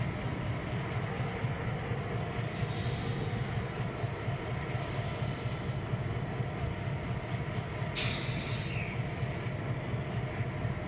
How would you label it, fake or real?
real